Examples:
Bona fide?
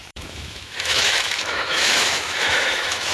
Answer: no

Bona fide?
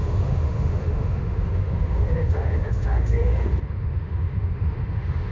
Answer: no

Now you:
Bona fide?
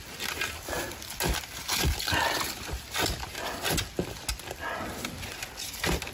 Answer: yes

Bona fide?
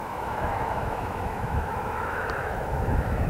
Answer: no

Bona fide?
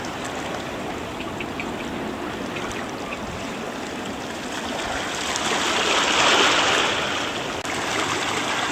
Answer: yes